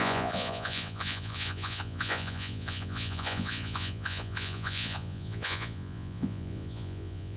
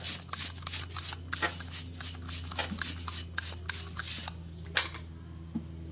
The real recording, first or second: second